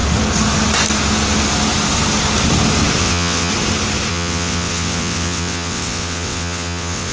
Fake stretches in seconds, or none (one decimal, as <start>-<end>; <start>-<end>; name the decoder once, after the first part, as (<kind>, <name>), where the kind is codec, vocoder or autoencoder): 3.0-3.5 (vocoder, WaveNeXt); 4.1-7.1